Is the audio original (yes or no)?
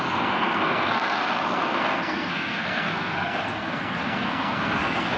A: no